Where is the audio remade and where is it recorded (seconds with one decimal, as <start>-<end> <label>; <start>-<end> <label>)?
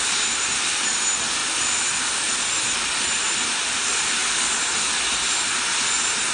0.0-6.3 recorded